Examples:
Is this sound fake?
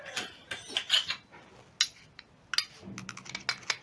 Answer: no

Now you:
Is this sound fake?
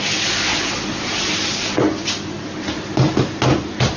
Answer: no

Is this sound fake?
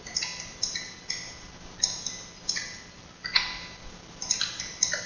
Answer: no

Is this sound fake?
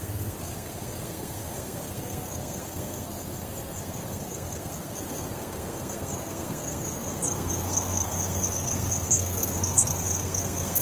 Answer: yes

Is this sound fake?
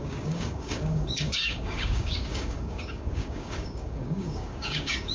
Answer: yes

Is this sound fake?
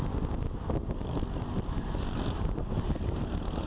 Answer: no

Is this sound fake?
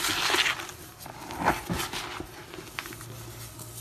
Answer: no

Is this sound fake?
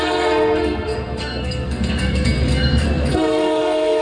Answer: yes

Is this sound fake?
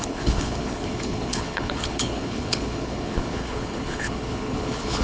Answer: yes